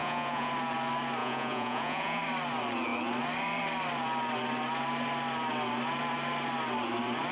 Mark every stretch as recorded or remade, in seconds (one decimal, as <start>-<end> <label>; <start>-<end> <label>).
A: 0.0-0.5 remade; 0.5-1.2 recorded; 1.2-2.2 remade; 2.2-7.3 recorded